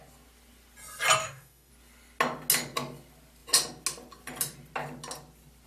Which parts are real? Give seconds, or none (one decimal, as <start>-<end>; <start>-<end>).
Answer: 0.0-1.2; 1.7-5.7